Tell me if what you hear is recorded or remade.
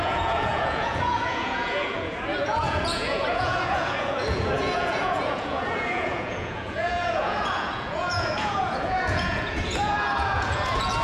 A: remade